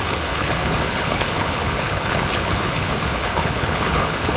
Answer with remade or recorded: remade